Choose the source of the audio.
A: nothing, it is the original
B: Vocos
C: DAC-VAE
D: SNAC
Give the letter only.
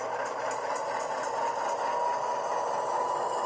A